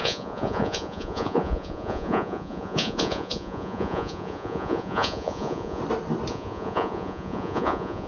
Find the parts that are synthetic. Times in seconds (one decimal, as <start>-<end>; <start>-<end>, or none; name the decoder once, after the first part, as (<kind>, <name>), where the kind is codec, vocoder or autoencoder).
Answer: 0.0-5.8 (vocoder, Vocos); 6.3-8.1